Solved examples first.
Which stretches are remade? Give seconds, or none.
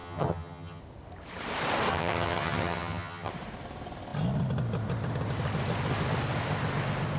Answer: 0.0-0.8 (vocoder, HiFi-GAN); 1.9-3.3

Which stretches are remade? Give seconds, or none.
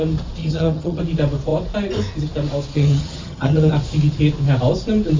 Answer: 0.4-1.0 (vocoder, HiFi-GAN); 2.7-3.7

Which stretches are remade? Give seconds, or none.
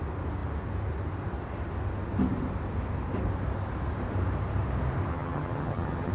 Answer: 5.1-6.1 (vocoder, HiFi-GAN)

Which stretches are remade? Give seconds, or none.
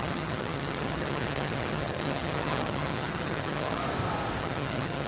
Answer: 0.0-3.8 (vocoder, HiFi-GAN); 4.4-5.1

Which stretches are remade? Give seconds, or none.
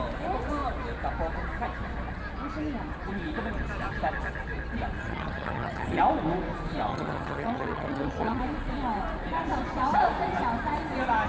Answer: 5.0-6.0 (vocoder, HiFi-GAN); 6.9-8.4